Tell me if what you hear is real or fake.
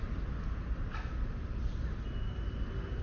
real